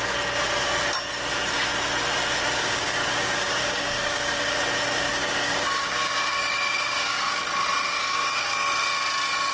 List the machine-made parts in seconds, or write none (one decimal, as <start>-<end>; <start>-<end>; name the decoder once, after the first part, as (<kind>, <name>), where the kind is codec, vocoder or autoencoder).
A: 2.6-4.6 (codec, DAC); 5.1-7.4; 8.0-8.5